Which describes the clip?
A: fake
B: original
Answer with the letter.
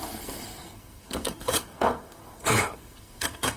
A